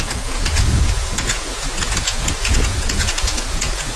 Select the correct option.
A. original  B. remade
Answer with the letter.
B